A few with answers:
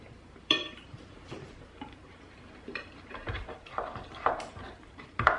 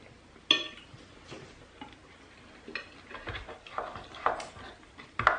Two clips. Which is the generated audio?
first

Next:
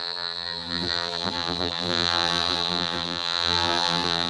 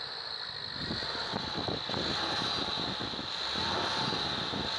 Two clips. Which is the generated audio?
first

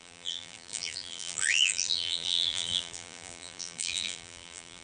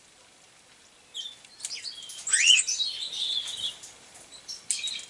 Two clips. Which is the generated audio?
first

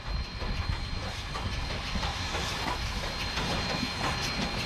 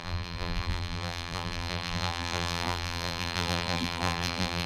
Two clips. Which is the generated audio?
second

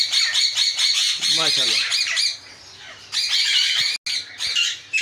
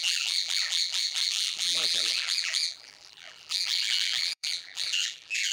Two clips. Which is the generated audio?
second